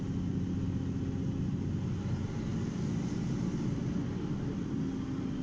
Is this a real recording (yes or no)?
yes